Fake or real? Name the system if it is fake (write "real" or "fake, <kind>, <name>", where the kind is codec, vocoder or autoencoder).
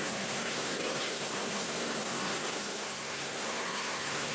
fake, codec, SNAC